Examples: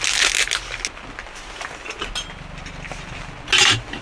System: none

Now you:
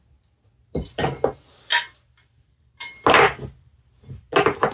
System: none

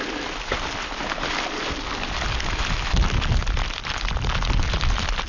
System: vocoder, BigVGAN v2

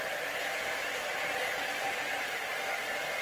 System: none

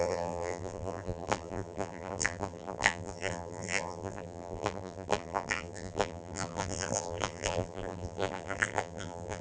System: vocoder, BigVGAN v2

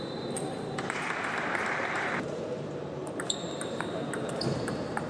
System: vocoder, BigVGAN v2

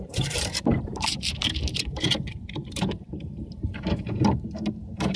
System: vocoder, BigVGAN v2